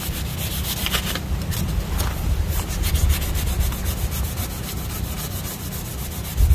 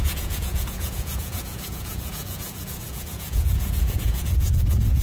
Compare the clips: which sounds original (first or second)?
first